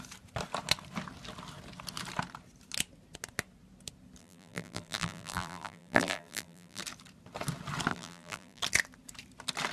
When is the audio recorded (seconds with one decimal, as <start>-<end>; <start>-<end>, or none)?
0.0-4.2; 6.8-7.9; 8.6-9.7